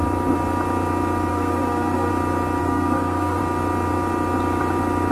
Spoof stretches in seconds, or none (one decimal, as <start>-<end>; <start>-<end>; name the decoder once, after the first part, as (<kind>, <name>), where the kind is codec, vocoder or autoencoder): 1.3-2.1 (codec, SNAC); 2.6-3.4